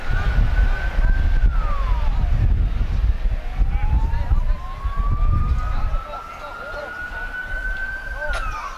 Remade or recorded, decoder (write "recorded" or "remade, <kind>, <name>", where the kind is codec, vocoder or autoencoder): recorded